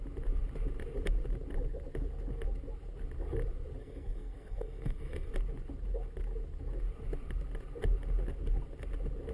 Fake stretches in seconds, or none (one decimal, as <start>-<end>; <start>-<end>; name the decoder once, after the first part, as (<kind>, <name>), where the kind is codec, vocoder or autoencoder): 3.8-5.3 (codec, SNAC)